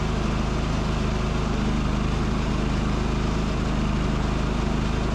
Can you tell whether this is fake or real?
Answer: real